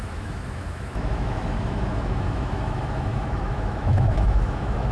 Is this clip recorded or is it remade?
remade